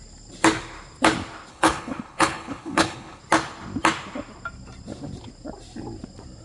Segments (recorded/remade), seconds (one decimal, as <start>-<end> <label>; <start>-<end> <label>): 0.0-1.5 recorded; 1.5-3.2 remade; 3.2-6.4 recorded